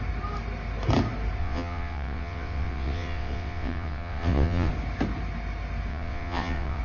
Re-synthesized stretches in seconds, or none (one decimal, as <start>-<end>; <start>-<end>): 1.4-4.7; 5.9-6.8

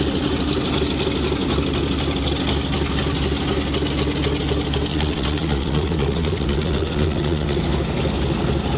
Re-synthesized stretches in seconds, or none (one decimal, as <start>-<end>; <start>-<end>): 4.9-7.6

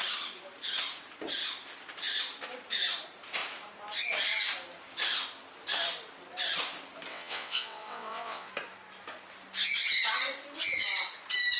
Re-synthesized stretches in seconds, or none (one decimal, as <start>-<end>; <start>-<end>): 7.1-8.5

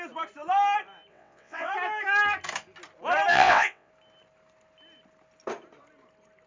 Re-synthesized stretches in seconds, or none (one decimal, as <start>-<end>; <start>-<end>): 1.1-1.7; 3.3-3.9

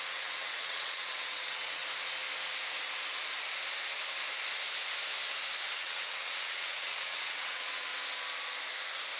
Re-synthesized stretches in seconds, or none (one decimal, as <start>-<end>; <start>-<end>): 0.0-1.8; 5.7-7.9

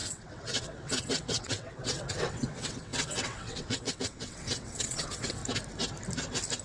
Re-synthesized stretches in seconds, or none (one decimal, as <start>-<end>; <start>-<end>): 0.0-5.4

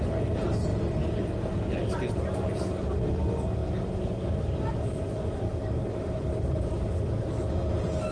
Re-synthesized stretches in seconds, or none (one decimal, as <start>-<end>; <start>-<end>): none

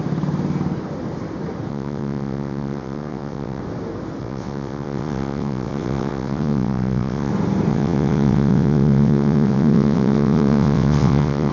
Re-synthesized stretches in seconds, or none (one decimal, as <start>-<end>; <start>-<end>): 1.7-3.6; 4.2-7.3; 7.7-11.5